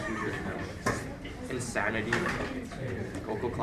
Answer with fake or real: fake